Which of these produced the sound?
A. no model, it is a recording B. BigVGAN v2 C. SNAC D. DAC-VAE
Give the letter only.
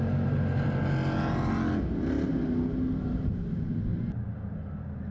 A